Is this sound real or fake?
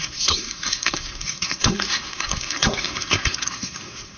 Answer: fake